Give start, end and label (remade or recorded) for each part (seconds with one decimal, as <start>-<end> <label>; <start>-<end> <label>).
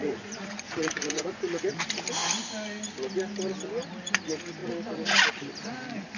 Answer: 0.0-1.7 remade; 1.7-6.2 recorded